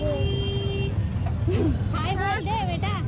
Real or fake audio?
real